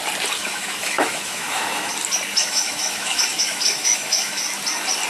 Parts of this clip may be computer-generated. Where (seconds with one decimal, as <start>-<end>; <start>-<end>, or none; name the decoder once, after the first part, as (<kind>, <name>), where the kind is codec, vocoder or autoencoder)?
0.4-1.9 (autoencoder, DAC-VAE); 2.4-4.4